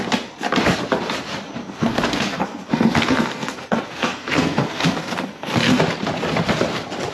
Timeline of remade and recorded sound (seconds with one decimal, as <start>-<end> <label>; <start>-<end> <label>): 0.0-1.6 recorded; 1.6-5.8 remade; 5.8-7.1 recorded